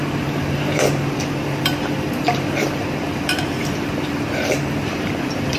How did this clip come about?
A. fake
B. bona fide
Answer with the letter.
A